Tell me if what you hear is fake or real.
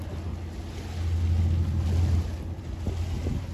real